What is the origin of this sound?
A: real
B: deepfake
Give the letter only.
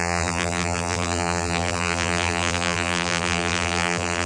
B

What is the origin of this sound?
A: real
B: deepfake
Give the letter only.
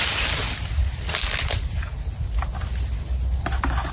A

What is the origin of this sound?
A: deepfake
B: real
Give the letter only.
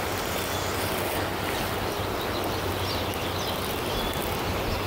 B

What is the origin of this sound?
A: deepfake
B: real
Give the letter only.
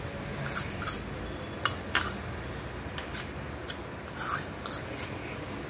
B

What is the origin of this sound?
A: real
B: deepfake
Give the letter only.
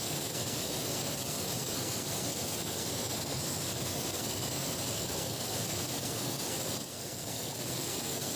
B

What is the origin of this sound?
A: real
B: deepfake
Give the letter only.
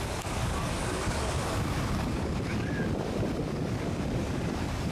B